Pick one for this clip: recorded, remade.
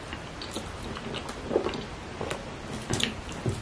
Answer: recorded